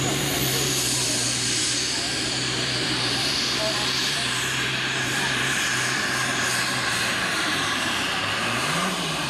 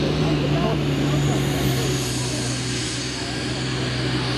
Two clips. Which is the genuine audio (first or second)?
second